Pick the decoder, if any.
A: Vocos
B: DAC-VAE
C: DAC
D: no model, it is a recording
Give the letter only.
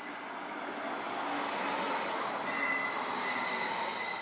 D